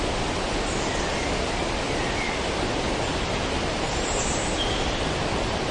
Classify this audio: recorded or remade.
recorded